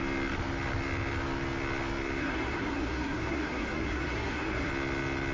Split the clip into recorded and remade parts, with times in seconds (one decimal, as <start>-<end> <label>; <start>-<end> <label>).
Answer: 0.0-2.2 recorded; 2.2-4.7 remade; 4.7-5.3 recorded